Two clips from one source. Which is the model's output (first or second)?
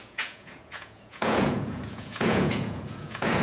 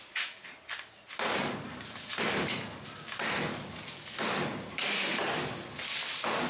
first